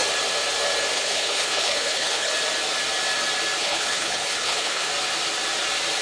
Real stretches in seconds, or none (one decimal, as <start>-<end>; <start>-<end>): 0.0-0.9; 2.3-3.6; 4.9-6.0